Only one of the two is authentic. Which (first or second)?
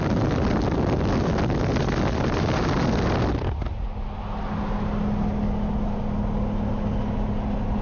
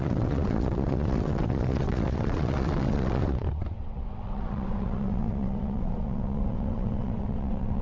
first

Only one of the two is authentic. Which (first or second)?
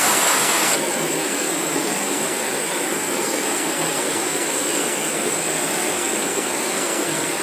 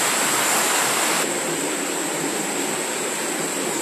second